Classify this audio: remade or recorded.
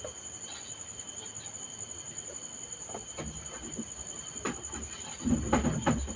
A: recorded